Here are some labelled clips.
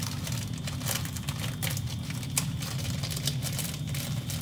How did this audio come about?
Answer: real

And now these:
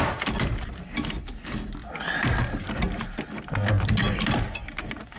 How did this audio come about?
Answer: real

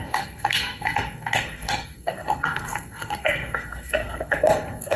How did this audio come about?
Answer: fake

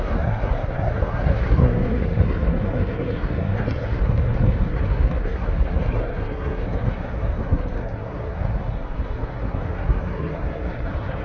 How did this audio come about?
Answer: fake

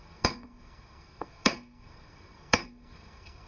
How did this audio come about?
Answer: fake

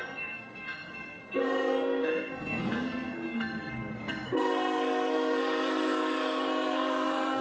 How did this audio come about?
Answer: fake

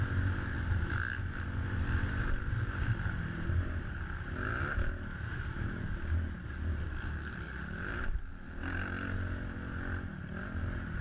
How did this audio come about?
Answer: real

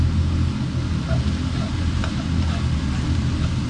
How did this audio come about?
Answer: real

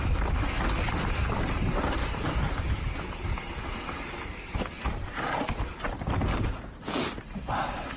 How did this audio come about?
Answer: real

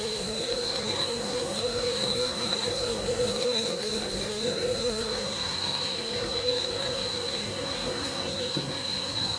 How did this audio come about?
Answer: fake